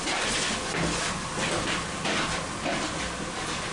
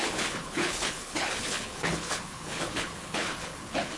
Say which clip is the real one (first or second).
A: first